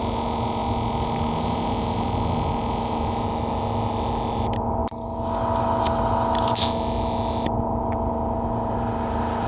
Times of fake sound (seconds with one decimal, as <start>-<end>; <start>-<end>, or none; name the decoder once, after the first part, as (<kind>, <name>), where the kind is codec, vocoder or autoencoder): none